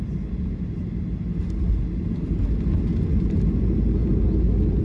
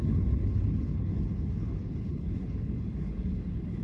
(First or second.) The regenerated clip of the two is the second